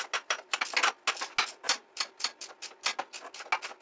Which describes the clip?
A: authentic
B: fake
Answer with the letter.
A